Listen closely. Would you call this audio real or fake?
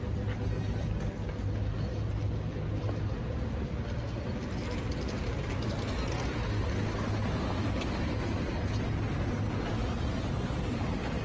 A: real